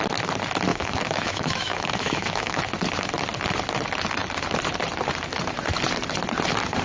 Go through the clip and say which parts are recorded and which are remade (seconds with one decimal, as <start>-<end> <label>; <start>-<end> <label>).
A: 0.0-0.7 recorded; 0.7-2.6 remade; 2.6-6.8 recorded